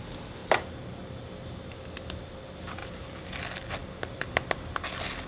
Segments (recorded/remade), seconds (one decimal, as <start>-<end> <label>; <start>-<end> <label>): 0.0-2.8 recorded; 2.8-3.3 remade; 3.3-3.8 recorded; 3.8-4.3 remade; 4.3-5.3 recorded